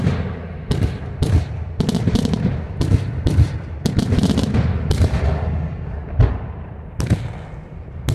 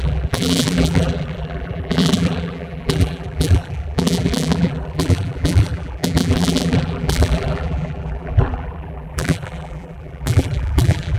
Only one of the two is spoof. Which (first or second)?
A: second